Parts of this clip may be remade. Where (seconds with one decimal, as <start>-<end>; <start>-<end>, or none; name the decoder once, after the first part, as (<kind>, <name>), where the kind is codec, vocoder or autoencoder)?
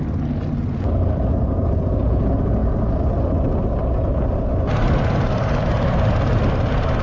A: none